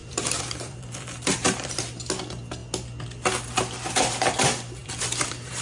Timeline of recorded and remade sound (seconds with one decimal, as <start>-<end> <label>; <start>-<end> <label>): 0.0-1.8 remade; 1.8-4.8 recorded; 4.8-5.6 remade